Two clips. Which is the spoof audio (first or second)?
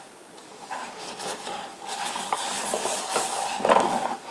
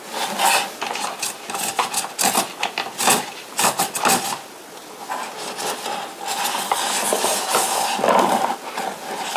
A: first